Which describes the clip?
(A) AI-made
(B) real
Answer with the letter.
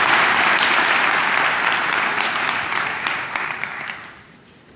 A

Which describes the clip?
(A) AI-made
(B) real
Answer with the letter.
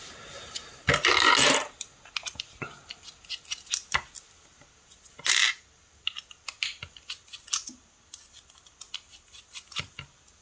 B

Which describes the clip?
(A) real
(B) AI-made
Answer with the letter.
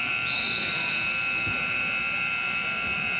B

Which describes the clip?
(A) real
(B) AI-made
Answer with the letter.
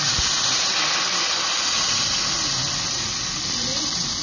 A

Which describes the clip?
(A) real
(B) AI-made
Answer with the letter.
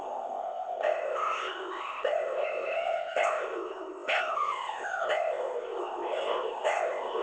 B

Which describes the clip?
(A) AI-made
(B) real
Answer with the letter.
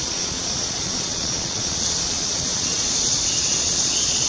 A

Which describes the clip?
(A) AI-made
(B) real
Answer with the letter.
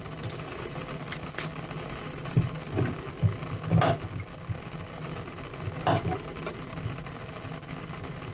B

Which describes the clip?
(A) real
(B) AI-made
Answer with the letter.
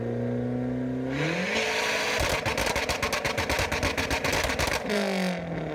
A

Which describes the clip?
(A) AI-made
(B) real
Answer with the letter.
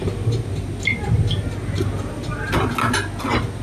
B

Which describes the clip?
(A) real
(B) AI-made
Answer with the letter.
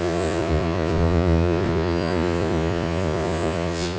B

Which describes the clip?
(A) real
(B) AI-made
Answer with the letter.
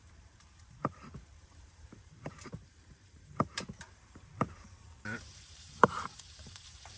B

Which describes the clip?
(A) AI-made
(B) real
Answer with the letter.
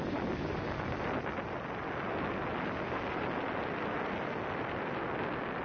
B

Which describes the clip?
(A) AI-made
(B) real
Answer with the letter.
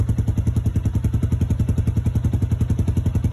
B